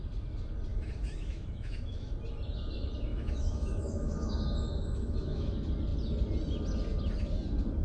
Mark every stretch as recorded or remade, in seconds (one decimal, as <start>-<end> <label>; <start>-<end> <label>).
0.0-0.7 recorded; 0.7-2.1 remade; 2.1-3.1 recorded; 3.1-5.5 remade; 5.5-7.8 recorded